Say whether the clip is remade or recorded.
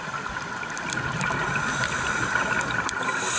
recorded